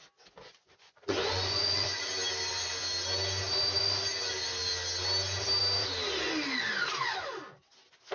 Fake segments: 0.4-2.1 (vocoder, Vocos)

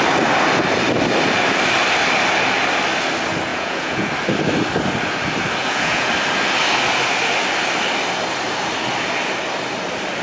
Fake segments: 3.5-4.1 (vocoder, Vocos); 5.6-6.1

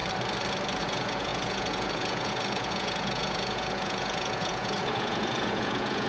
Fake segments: 0.8-6.1 (vocoder, Vocos)

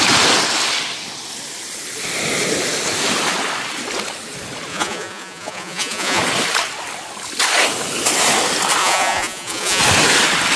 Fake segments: 4.7-6.2 (vocoder, Vocos); 8.8-9.8